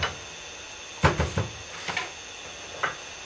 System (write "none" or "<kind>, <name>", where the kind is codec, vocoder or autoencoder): none